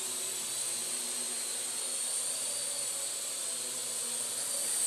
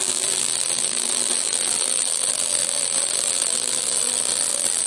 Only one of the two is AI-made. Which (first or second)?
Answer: second